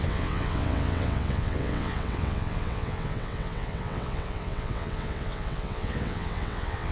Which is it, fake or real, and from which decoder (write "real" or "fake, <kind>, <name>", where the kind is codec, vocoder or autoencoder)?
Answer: fake, vocoder, WaveNeXt